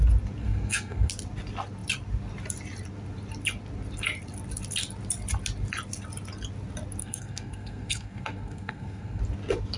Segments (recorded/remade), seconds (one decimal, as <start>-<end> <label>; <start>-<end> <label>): 0.0-0.4 recorded; 0.4-1.1 remade; 1.1-7.0 recorded; 7.0-9.2 remade; 9.2-9.8 recorded